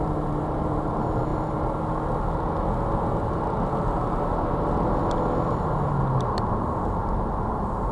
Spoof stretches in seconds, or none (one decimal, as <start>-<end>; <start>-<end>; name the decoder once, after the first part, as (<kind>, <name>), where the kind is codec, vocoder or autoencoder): 0.0-1.3 (vocoder, BigVGAN v2); 6.0-7.9